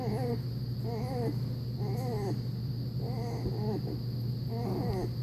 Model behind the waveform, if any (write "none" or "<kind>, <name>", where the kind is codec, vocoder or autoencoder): none